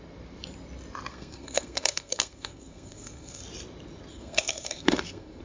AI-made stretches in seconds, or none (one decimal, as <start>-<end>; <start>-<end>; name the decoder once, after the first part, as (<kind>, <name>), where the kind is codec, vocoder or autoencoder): 1.1-3.4 (codec, SNAC); 4.1-5.4